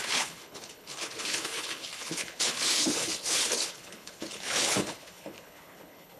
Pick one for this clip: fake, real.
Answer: fake